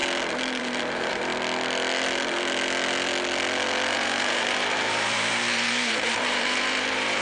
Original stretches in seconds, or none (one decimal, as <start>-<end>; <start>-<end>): 0.0-0.6; 1.3-3.9